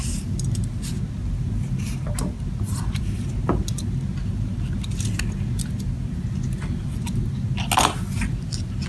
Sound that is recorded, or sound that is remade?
recorded